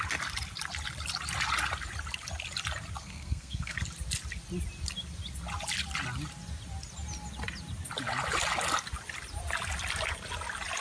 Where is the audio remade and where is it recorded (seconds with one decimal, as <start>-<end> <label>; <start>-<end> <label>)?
0.0-3.0 recorded; 3.0-3.8 remade; 3.8-10.8 recorded

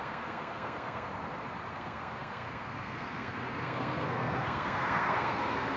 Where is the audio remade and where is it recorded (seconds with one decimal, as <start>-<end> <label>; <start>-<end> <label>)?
0.0-1.1 remade; 1.1-1.7 recorded; 1.7-5.8 remade

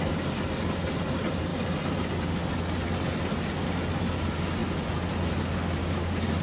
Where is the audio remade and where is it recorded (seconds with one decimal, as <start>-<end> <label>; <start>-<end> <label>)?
0.0-5.8 recorded; 5.8-6.4 remade

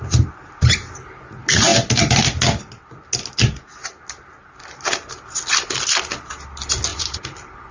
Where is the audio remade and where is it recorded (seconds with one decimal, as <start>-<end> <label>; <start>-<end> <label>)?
0.0-6.9 recorded; 6.9-7.7 remade

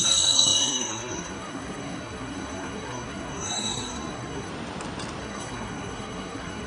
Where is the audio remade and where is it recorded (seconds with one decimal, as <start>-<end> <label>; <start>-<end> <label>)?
0.0-4.5 remade; 4.5-5.2 recorded; 5.2-6.7 remade

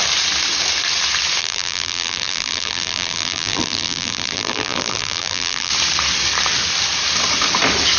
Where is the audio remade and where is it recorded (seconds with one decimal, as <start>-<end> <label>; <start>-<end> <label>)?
0.0-1.4 recorded; 1.4-5.7 remade; 5.7-8.0 recorded